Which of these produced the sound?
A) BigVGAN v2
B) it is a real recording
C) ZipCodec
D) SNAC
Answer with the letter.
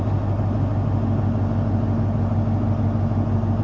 B